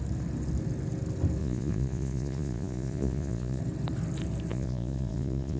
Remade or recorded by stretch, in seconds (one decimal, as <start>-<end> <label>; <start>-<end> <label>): 0.0-1.4 recorded; 1.4-3.6 remade; 3.6-4.5 recorded; 4.5-5.6 remade